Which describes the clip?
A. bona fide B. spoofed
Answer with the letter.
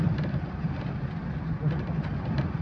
A